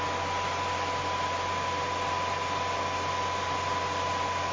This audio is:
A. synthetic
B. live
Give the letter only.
B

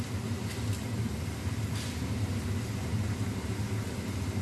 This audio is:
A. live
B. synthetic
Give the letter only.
A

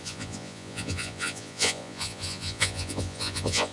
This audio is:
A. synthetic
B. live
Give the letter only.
A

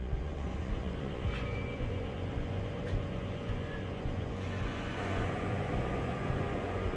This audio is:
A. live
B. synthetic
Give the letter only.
B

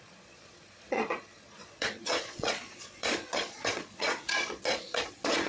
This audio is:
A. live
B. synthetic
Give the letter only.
B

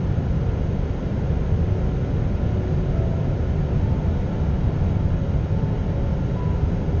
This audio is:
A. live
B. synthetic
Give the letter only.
A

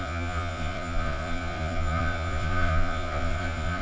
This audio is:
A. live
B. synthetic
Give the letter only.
B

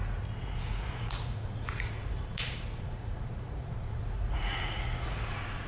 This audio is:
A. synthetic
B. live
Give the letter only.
A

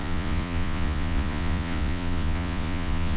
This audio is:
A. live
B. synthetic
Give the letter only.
B